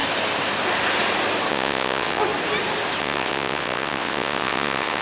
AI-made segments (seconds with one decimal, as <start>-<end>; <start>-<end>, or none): 1.5-2.2; 3.0-5.0